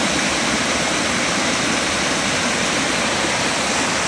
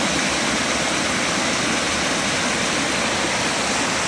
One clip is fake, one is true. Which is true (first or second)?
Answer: second